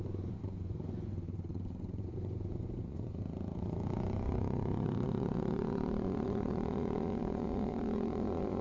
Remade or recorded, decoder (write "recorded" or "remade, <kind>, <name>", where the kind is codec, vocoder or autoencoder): remade, vocoder, Vocos